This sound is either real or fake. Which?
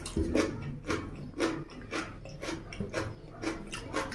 real